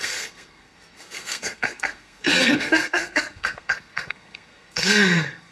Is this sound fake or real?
fake